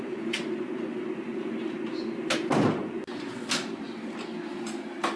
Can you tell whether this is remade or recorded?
recorded